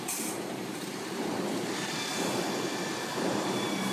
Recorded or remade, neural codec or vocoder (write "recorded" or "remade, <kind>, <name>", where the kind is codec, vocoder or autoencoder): remade, vocoder, BigVGAN v2